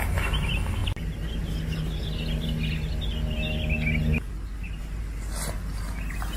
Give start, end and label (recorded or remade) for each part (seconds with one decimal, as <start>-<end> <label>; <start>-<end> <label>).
0.0-6.4 recorded